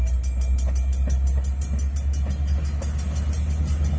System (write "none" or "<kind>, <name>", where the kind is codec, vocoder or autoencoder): none